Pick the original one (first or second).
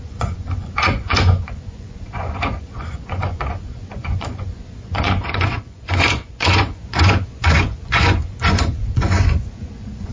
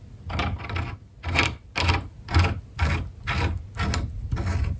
second